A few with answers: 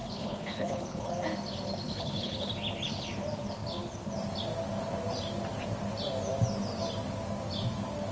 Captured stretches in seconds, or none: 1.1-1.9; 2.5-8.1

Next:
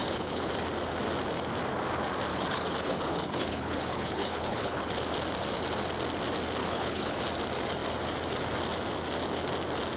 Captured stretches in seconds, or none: 0.5-2.3; 4.9-6.6; 7.2-10.0